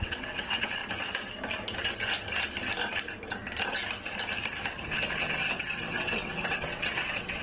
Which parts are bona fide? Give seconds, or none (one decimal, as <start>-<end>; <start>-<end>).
0.8-5.2